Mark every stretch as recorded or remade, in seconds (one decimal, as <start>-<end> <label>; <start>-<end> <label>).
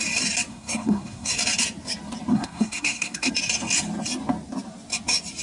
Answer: 0.0-0.5 recorded; 0.5-1.3 remade; 1.3-2.3 recorded; 2.3-3.3 remade; 3.3-5.4 recorded